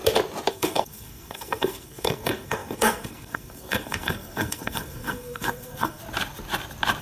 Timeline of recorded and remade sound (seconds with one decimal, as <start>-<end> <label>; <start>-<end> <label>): 0.0-0.5 recorded; 0.5-6.0 remade; 6.0-7.0 recorded